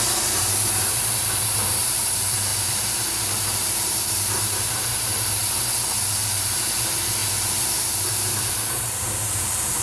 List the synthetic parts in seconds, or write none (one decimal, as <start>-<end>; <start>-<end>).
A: 0.0-5.4; 6.1-9.8